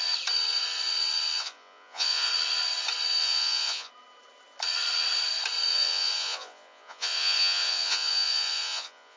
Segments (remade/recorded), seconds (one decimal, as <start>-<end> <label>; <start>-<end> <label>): 0.0-1.4 recorded; 1.4-2.3 remade; 2.3-3.2 recorded; 3.2-3.9 remade; 3.9-5.7 recorded; 5.7-9.2 remade